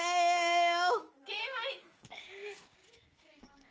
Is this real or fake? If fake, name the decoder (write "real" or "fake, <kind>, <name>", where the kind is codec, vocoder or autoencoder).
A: fake, codec, DAC